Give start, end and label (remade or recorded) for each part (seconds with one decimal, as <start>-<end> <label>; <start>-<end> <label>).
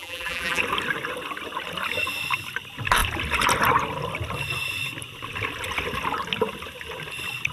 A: 0.0-0.6 remade; 0.6-7.5 recorded